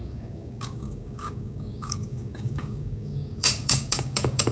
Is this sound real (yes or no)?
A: no